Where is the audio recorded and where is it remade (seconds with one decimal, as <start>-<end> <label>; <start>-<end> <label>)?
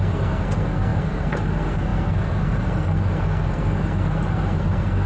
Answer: 0.0-5.1 remade